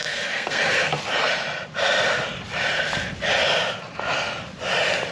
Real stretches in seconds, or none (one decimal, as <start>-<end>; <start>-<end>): 0.9-5.1